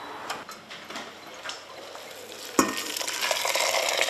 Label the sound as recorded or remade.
recorded